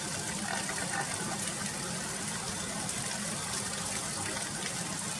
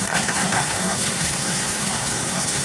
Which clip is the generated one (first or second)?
second